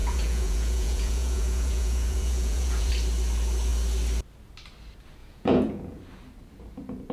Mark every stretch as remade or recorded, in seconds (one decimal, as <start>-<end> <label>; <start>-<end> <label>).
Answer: 0.0-2.9 remade; 2.9-5.2 recorded; 5.2-6.0 remade; 6.0-7.1 recorded